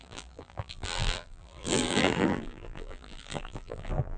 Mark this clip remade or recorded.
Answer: remade